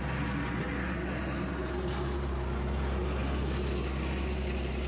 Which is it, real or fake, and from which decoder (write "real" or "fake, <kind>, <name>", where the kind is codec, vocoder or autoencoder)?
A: real